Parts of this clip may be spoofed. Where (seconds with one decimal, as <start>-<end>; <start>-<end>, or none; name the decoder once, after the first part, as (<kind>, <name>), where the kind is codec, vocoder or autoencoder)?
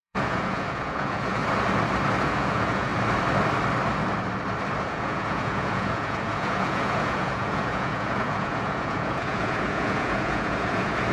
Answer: 0.0-1.4 (vocoder, Vocos); 2.2-2.9; 4.8-11.1